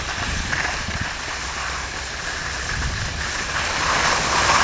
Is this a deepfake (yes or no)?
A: yes